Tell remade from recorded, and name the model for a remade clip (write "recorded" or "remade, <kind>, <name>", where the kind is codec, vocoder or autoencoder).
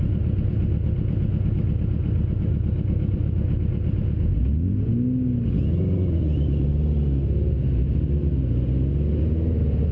recorded